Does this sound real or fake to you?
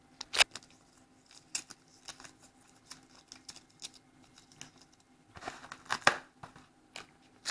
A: real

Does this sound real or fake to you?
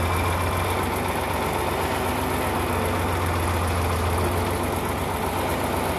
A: real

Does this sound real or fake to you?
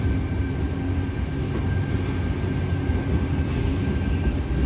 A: real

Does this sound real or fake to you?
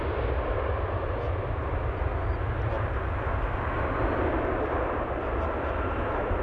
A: real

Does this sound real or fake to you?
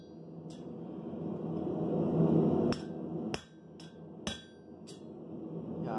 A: real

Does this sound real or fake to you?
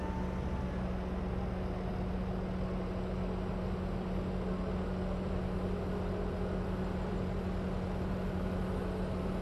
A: real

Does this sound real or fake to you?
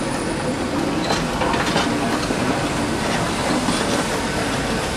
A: real